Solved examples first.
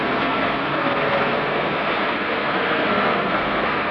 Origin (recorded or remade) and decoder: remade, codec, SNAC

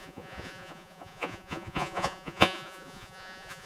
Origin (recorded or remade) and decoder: remade, vocoder, Vocos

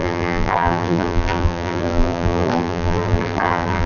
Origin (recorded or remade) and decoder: remade, vocoder, BigVGAN v2